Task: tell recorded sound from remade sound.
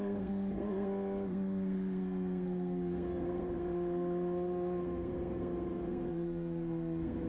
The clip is remade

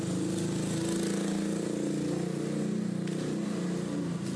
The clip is recorded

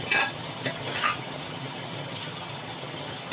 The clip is remade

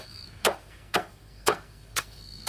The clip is remade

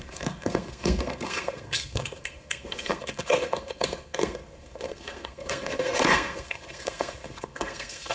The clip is remade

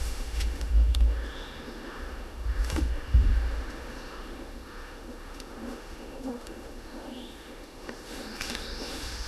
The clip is remade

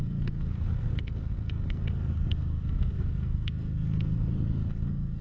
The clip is remade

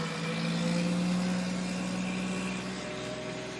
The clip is recorded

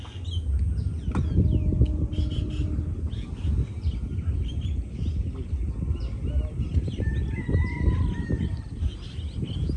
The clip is recorded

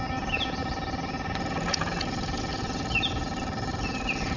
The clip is remade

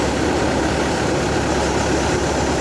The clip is recorded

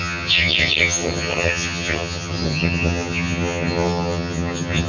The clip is remade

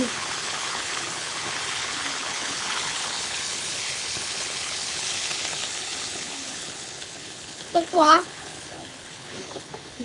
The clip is remade